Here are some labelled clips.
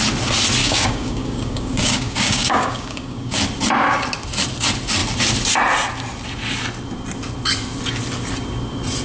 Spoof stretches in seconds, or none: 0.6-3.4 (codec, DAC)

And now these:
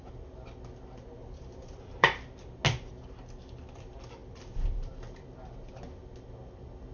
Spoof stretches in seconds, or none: 1.2-2.2 (vocoder, BigVGAN v2); 4.2-4.9

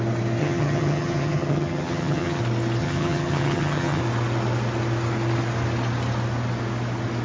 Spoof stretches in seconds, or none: 0.4-2.4 (vocoder, HiFi-GAN); 2.8-4.0

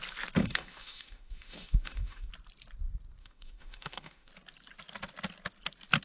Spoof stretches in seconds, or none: 0.4-2.3 (autoencoder, DAC-VAE); 3.2-4.3

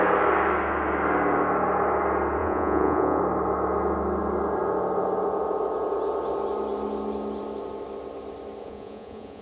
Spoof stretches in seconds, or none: 2.4-3.2 (vocoder, Vocos); 8.6-9.4